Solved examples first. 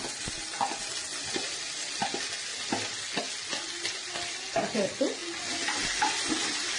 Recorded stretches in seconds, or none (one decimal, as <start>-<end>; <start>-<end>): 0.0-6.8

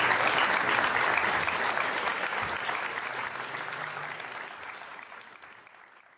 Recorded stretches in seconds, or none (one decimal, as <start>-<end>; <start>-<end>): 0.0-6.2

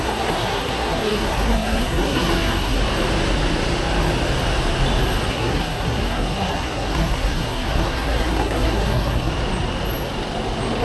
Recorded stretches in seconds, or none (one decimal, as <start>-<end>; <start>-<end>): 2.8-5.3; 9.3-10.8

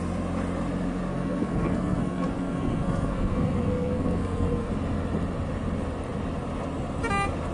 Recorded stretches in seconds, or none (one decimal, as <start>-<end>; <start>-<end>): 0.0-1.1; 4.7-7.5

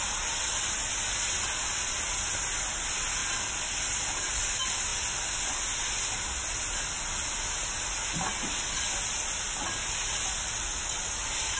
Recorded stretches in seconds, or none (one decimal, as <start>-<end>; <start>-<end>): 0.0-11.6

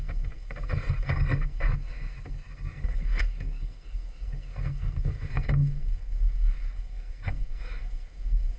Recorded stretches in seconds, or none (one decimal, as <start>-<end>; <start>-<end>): none

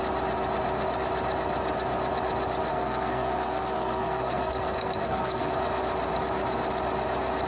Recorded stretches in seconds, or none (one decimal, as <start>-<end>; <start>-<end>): 0.0-2.7; 5.5-7.5